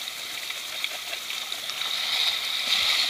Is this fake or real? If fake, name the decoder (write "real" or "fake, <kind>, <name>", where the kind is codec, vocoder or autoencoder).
real